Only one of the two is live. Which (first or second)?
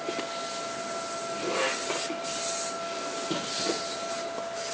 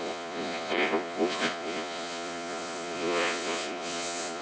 first